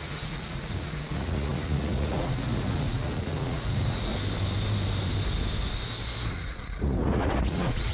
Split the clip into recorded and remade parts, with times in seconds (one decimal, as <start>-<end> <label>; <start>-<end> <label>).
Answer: 0.0-4.1 remade; 4.1-6.3 recorded; 6.3-7.9 remade